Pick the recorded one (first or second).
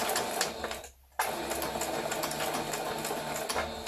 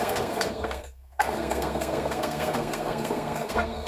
first